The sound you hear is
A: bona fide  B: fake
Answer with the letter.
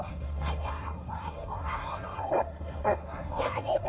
B